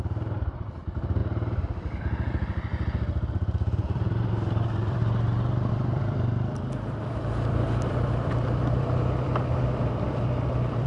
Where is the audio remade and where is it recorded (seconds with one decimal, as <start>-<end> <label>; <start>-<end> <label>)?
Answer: 0.0-1.2 remade; 1.2-2.0 recorded; 2.0-2.7 remade; 2.7-3.3 recorded; 3.3-5.0 remade; 5.0-5.7 recorded; 5.7-10.9 remade